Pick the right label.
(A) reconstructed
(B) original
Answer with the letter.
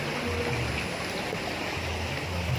B